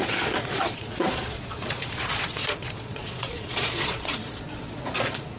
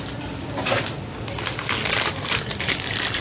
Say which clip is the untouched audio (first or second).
second